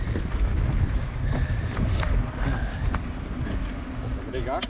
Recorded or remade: recorded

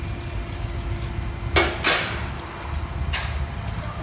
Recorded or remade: recorded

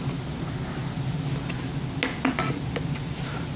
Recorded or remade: recorded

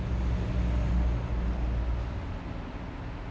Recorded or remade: recorded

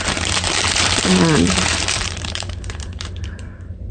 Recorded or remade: remade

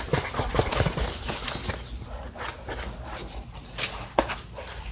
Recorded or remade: remade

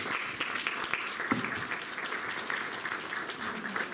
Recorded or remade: recorded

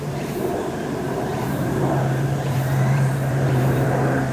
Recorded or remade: remade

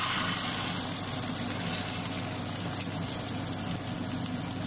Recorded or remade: remade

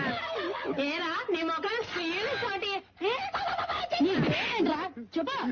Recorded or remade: recorded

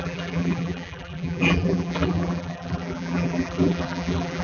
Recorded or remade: remade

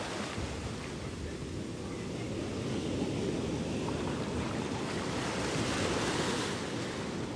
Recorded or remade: remade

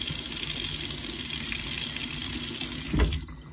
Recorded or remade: recorded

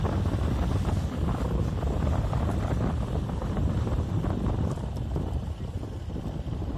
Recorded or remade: remade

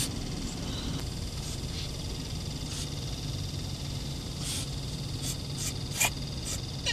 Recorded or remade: recorded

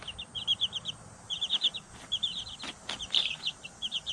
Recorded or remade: remade